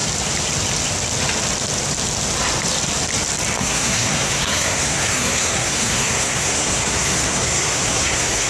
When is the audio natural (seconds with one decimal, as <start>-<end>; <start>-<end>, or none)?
0.0-3.6